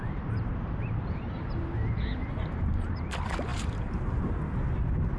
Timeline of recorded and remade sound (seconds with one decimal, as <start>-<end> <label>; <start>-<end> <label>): 0.0-0.9 remade; 0.9-2.2 recorded; 2.2-3.1 remade; 3.1-3.5 recorded; 3.5-4.2 remade; 4.2-5.2 recorded